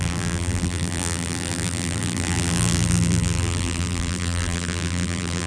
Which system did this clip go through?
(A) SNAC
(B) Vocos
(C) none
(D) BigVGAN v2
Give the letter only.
D